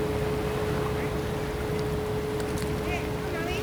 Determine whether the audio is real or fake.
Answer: real